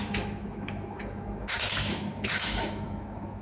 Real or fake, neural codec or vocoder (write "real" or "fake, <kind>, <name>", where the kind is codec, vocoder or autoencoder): fake, autoencoder, DAC-VAE